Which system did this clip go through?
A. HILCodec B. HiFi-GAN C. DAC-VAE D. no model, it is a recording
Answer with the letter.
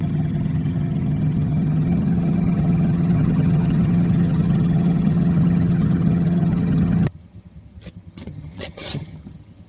B